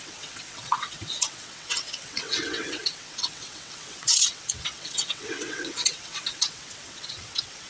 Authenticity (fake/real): fake